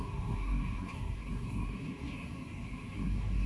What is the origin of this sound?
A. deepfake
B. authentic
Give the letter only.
A